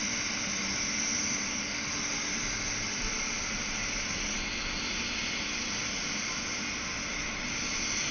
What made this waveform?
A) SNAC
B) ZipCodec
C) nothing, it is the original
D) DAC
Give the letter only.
C